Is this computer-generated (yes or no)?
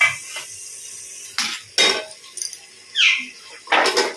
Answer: no